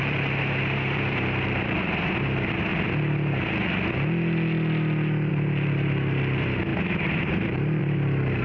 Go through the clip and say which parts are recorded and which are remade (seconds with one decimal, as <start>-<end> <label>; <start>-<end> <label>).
0.0-2.7 remade; 2.7-5.3 recorded; 5.3-8.4 remade